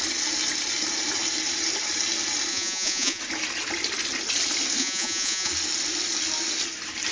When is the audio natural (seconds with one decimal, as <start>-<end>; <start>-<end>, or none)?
0.0-2.5; 3.2-4.8; 5.5-7.1